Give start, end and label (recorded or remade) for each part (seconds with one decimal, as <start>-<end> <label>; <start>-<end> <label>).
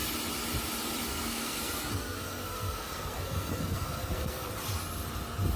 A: 0.0-1.1 recorded; 1.1-4.5 remade; 4.5-5.6 recorded